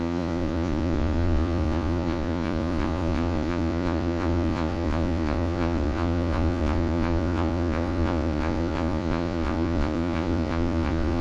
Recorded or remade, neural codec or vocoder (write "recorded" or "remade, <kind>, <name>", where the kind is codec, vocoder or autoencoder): remade, vocoder, Vocos